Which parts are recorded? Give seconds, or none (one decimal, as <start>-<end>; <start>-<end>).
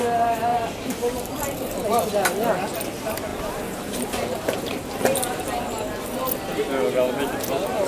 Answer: 0.0-0.5; 2.0-3.3; 5.7-7.9